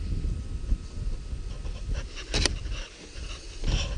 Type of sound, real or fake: real